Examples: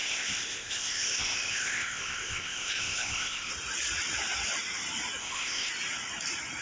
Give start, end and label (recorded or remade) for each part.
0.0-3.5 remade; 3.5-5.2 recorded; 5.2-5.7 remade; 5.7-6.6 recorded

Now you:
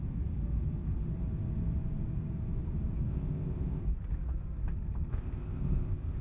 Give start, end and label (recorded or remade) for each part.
0.0-3.1 recorded; 3.1-3.8 remade; 3.8-5.1 recorded; 5.1-6.2 remade

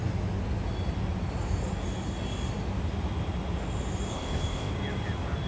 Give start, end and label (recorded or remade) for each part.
0.0-4.1 recorded; 4.1-4.7 remade; 4.7-5.5 recorded

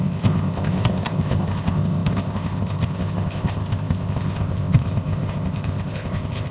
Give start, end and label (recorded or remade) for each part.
0.0-6.5 remade

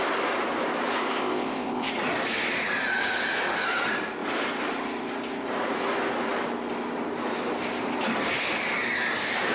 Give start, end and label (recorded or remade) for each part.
0.0-1.0 recorded; 1.0-1.9 remade; 1.9-9.5 recorded

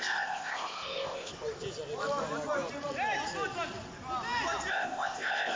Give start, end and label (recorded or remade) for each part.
0.0-1.3 remade; 1.3-4.7 recorded; 4.7-5.6 remade

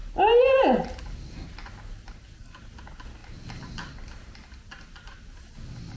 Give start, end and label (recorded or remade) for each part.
0.0-6.0 recorded

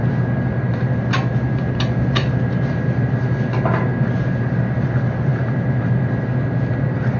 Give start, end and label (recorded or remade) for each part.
0.0-7.2 recorded